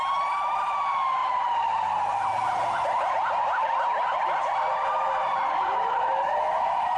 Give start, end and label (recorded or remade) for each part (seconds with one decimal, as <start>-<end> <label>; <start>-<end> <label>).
0.0-4.7 recorded; 4.7-6.3 remade; 6.3-7.0 recorded